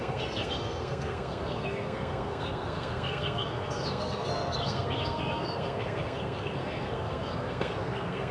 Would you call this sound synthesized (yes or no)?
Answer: yes